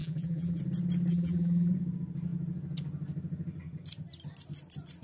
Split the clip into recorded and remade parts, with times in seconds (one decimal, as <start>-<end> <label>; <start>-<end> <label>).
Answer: 0.0-0.6 remade; 0.6-1.1 recorded; 1.1-1.7 remade; 1.7-5.0 recorded